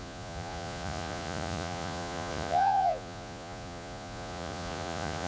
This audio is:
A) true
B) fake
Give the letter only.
B